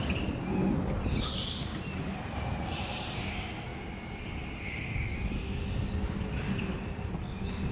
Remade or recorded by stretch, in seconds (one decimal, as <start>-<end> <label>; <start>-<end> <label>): 0.0-7.7 recorded